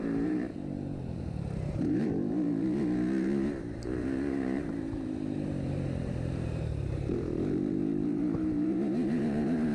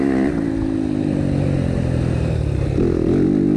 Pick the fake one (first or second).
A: first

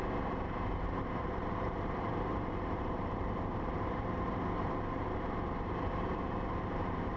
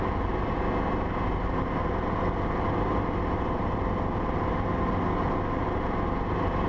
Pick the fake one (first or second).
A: first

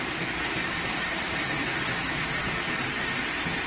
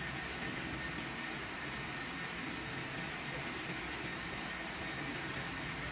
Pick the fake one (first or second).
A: first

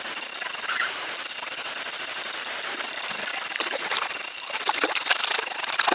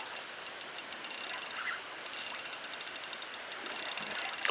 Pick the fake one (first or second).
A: first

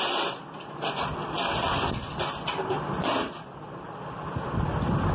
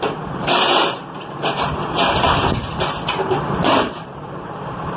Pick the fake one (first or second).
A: second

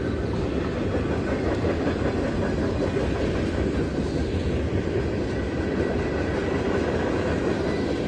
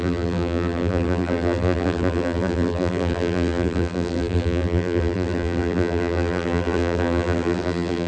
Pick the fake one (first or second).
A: second